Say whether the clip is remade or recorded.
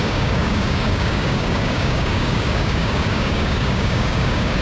remade